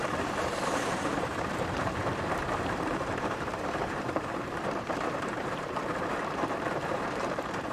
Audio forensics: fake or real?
fake